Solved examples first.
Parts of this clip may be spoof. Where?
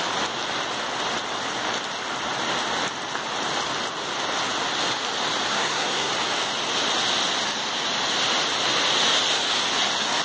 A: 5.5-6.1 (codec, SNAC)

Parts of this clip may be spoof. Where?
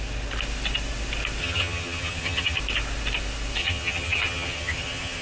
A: 1.4-2.6 (vocoder, HiFi-GAN); 3.6-5.2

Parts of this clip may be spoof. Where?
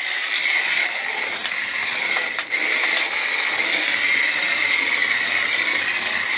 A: none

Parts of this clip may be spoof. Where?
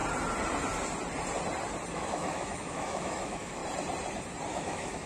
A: 1.9-3.6 (autoencoder, DAC-VAE); 4.5-5.1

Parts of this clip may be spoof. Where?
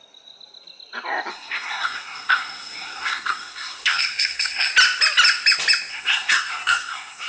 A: 1.3-4.7 (codec, SNAC); 5.9-7.3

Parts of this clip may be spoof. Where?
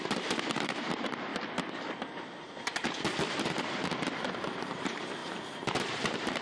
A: 0.5-1.3 (vocoder, BigVGAN v2); 3.3-3.8; 4.4-6.4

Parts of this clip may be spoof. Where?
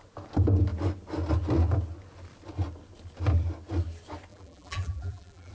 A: 4.3-5.5 (vocoder, BigVGAN v2)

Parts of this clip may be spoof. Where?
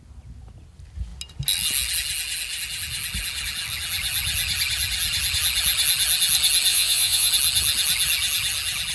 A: 6.7-7.3 (vocoder, Vocos)